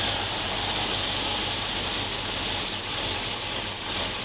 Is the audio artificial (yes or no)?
no